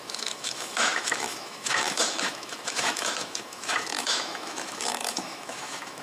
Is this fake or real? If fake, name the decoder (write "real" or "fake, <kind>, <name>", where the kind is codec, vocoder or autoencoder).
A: fake, autoencoder, DAC-VAE